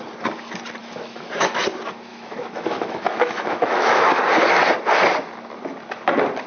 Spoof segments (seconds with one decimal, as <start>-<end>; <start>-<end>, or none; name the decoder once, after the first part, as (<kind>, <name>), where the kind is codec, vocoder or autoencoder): 0.8-1.6 (autoencoder, DAC-VAE); 2.1-4.1